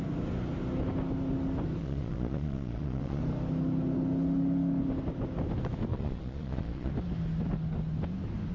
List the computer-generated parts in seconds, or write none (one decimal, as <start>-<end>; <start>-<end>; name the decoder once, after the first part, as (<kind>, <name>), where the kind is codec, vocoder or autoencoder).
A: 1.8-3.2 (vocoder, Vocos); 5.9-6.9